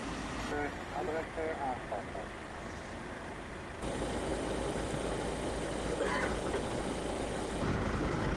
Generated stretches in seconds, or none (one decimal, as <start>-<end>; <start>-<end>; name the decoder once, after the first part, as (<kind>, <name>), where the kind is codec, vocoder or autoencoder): 6.3-6.8 (codec, HILCodec); 7.7-8.4